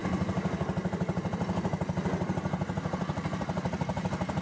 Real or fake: real